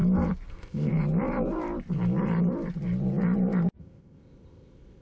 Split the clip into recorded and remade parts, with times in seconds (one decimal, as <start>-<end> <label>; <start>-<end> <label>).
0.0-0.5 recorded; 0.5-0.9 remade; 0.9-3.8 recorded; 3.8-5.0 remade